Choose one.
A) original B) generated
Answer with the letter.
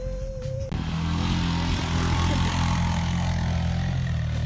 A